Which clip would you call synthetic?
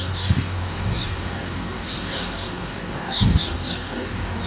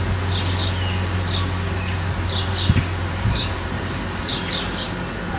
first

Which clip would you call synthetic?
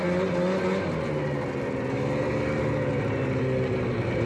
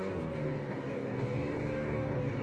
second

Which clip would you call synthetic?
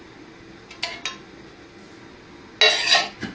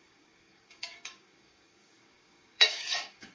second